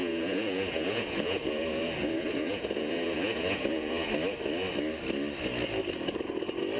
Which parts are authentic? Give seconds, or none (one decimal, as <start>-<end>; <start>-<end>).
4.1-6.8